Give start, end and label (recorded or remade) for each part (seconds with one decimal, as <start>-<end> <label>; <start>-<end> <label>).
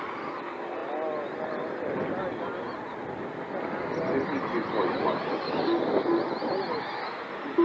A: 0.0-7.6 recorded